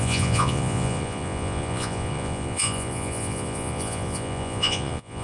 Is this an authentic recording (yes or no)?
no